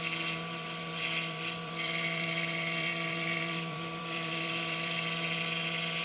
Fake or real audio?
fake